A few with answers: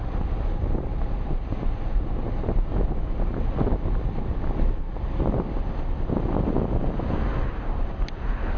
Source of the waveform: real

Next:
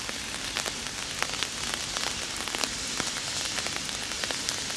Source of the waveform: real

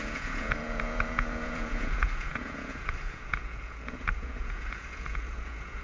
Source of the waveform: fake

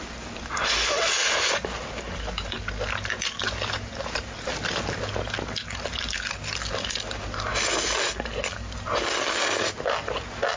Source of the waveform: real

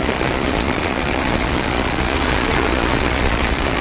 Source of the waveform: fake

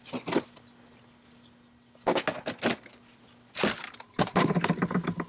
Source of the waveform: real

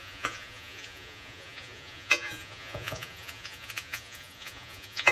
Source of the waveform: fake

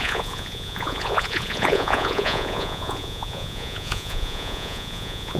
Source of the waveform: fake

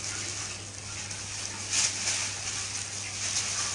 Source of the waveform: real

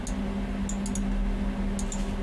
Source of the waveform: real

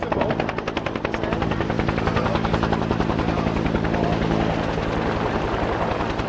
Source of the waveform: real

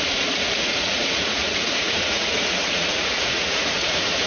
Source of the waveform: fake